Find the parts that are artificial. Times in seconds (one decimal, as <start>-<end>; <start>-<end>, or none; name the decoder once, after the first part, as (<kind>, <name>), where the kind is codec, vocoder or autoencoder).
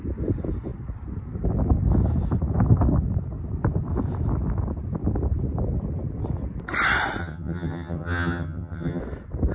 7.2-9.0 (vocoder, HiFi-GAN)